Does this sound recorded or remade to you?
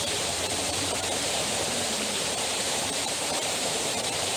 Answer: remade